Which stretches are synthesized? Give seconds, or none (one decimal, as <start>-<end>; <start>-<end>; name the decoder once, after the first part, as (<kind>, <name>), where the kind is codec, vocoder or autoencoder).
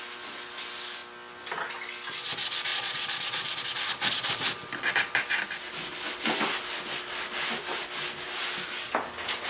2.7-3.6 (vocoder, Vocos)